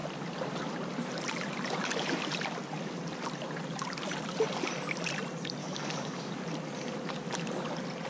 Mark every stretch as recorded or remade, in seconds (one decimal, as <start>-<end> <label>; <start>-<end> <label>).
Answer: 0.0-5.6 recorded; 5.6-6.3 remade; 6.3-8.1 recorded